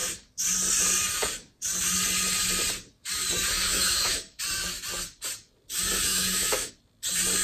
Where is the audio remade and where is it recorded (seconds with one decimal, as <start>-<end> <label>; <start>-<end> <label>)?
0.0-3.7 recorded; 3.7-4.4 remade; 4.4-6.1 recorded; 6.1-6.7 remade; 6.7-7.4 recorded